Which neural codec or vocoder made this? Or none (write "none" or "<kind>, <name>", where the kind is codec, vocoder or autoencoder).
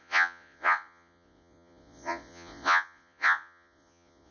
vocoder, Vocos